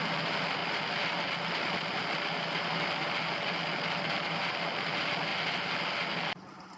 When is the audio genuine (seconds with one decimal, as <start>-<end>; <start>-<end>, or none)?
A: 0.0-6.8